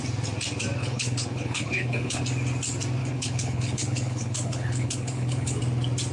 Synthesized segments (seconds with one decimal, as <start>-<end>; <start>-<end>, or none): 0.8-2.2; 3.0-5.6